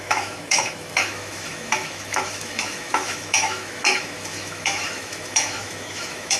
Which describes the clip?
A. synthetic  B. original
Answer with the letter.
A